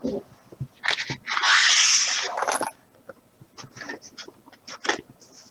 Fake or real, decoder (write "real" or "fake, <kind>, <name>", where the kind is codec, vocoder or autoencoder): real